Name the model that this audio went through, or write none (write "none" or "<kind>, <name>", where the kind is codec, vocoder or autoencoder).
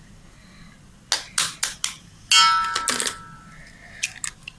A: none